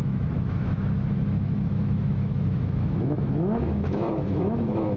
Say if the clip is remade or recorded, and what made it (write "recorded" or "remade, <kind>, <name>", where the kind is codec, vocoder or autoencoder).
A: remade, autoencoder, DAC-VAE